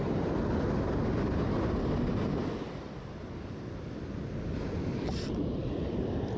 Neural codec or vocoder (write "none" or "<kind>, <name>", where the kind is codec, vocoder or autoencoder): none